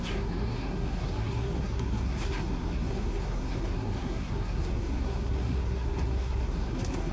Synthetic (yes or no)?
yes